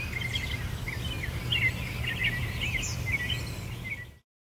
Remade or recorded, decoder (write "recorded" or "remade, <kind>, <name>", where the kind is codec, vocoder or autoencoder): recorded